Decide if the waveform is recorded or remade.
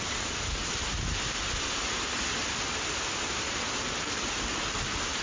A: recorded